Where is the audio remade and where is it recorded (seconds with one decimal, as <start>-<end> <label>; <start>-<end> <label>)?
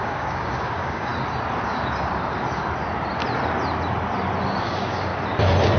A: 0.0-1.1 remade; 1.1-4.6 recorded; 4.6-5.1 remade; 5.1-5.8 recorded